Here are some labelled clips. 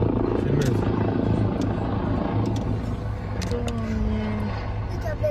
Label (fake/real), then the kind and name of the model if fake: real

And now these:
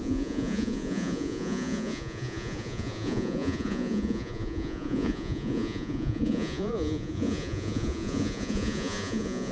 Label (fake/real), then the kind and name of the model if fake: fake, vocoder, Vocos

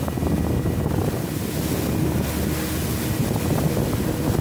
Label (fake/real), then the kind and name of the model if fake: real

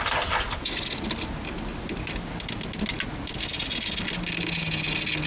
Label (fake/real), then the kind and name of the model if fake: real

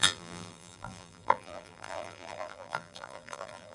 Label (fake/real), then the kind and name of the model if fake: fake, vocoder, BigVGAN v2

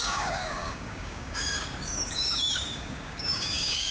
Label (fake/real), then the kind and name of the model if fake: fake, codec, DAC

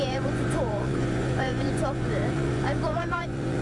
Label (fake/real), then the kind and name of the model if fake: fake, vocoder, Vocos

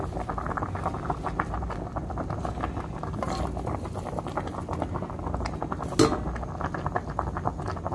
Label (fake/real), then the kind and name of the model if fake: real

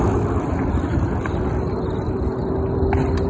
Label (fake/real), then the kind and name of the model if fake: real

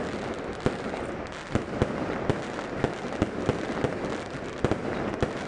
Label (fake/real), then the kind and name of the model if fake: real